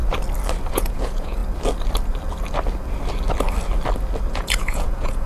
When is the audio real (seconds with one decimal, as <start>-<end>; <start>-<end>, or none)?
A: 0.0-0.7; 1.4-4.3